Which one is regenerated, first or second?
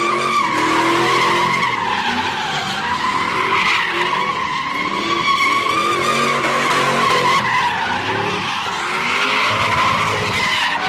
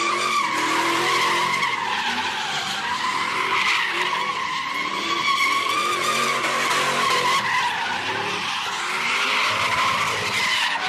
second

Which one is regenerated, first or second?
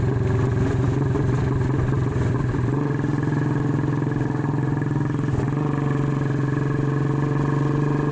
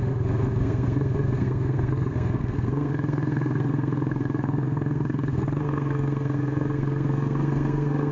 second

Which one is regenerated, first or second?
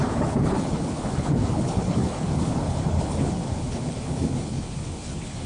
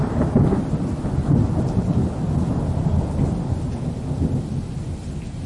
first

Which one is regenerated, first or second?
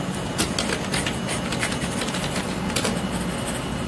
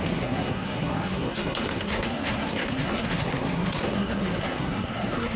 second